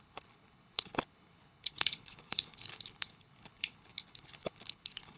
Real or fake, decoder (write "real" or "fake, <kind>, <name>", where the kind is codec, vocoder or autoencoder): fake, codec, HILCodec